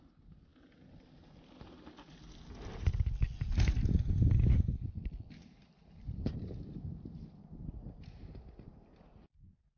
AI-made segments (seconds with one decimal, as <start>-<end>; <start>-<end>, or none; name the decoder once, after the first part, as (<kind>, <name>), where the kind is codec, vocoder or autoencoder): 5.4-7.3 (vocoder, BigVGAN v2)